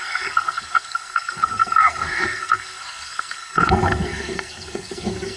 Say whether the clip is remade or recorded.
remade